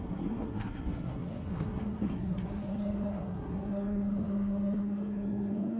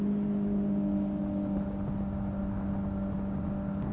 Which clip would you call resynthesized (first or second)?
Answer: first